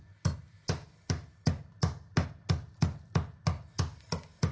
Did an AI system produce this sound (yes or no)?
no